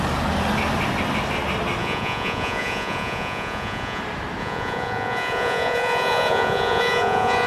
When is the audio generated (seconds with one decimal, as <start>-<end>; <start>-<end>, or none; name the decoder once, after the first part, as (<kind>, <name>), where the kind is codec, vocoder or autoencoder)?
1.8-4.0 (vocoder, Vocos); 4.4-7.5